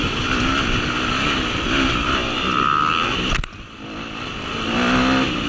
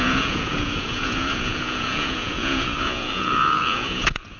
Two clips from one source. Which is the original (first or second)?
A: first